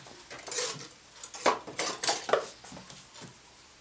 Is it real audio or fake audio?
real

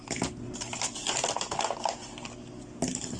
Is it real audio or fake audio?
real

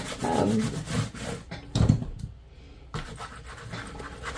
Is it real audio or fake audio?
real